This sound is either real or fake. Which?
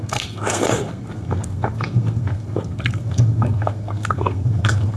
fake